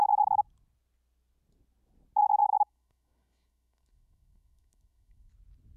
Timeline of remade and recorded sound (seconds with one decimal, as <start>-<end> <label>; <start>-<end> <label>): 0.0-2.4 recorded; 2.4-5.3 remade; 5.3-5.8 recorded